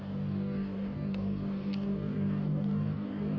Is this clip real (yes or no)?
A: no